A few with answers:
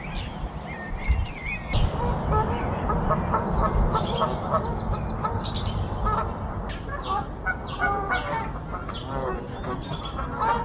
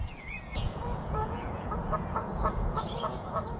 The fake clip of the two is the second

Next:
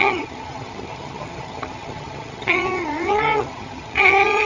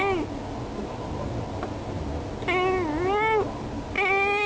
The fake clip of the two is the first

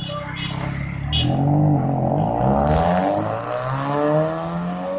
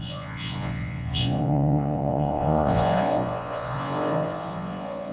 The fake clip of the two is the second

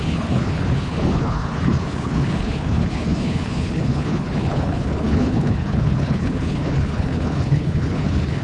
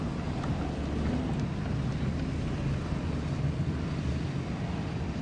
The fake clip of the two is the first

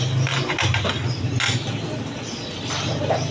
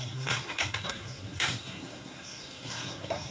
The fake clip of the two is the second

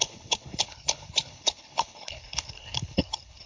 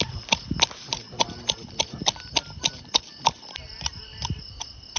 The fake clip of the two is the first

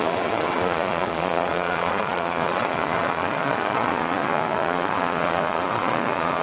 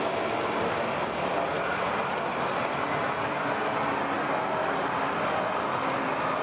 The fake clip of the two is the first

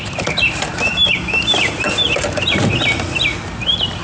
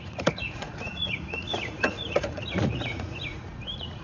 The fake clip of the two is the second